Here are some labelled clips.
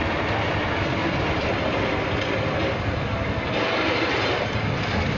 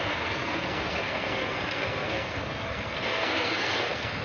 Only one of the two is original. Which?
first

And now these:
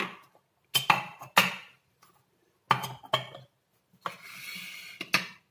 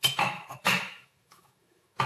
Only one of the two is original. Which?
first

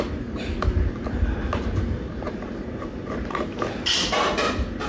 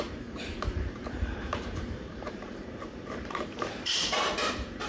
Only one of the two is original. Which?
first